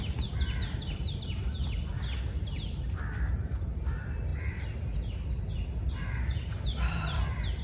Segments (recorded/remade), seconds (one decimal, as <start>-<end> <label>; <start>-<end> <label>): 0.0-7.6 recorded